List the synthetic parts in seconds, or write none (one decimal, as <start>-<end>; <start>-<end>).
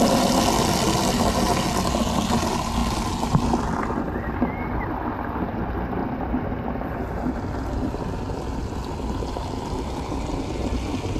none